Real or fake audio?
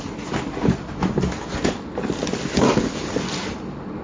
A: real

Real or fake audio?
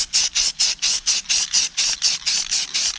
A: real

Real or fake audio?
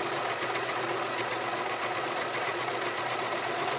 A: fake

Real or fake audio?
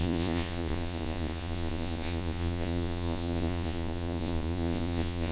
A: fake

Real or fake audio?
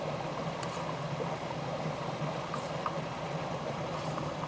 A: real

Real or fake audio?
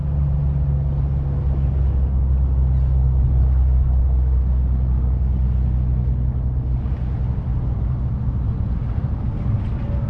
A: real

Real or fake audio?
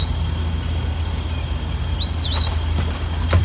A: real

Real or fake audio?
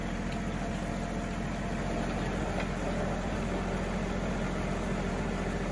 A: real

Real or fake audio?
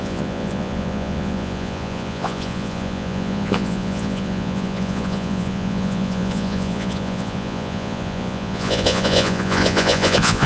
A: fake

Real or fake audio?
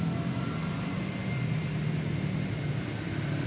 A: real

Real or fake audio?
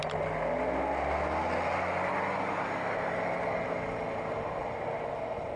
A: real